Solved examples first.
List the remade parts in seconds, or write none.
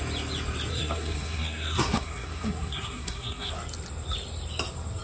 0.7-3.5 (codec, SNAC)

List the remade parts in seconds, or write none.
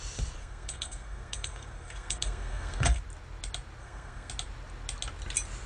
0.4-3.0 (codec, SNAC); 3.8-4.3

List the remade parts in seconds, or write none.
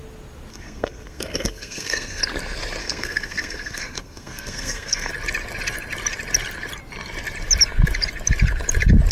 0.5-2.2 (codec, SNAC); 2.8-5.1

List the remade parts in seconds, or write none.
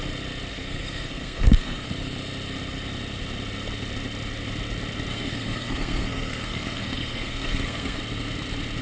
0.5-1.9 (codec, SNAC); 5.1-8.0